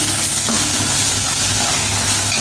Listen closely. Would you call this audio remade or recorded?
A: recorded